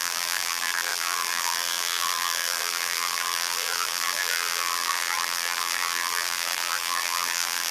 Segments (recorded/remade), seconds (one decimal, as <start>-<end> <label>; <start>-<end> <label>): 0.0-7.7 remade